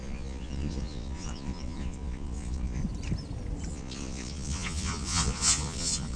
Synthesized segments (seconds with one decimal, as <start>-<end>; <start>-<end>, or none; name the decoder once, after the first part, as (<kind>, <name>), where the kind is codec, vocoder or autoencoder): 0.0-2.8 (vocoder, Vocos); 3.7-6.2